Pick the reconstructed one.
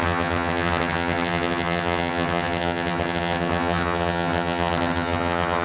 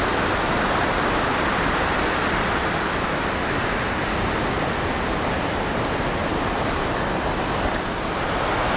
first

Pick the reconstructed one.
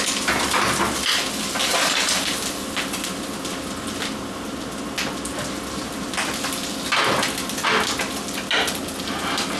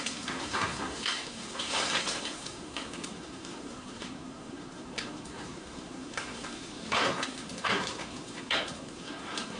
second